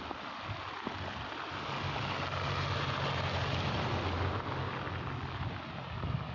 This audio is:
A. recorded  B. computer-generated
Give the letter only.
A